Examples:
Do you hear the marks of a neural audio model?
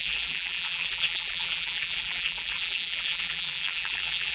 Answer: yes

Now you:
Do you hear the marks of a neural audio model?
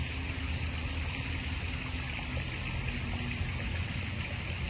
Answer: no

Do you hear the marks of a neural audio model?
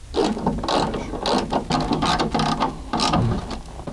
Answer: no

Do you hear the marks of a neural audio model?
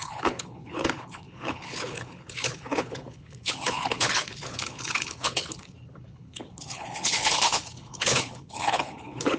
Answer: yes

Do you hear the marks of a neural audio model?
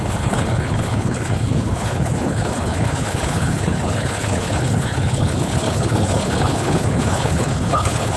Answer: yes